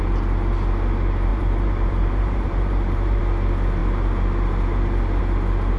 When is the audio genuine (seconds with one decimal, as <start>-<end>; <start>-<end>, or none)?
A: 0.0-1.3; 3.2-5.8